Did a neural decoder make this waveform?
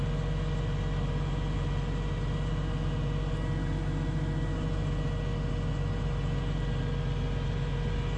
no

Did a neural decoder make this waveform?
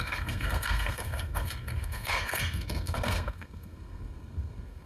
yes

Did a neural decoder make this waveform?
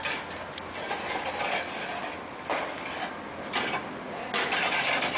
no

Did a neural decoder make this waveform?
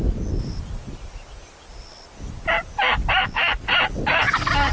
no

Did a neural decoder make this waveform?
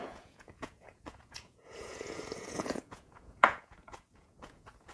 yes